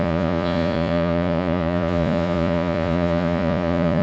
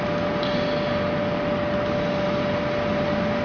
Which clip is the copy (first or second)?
first